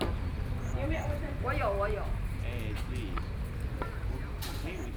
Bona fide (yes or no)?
yes